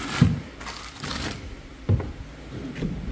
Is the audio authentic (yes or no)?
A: yes